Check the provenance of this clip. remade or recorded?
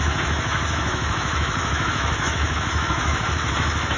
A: remade